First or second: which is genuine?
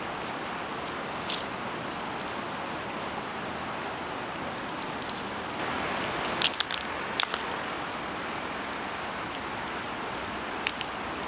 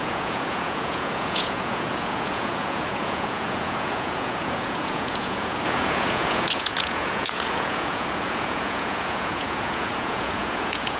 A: first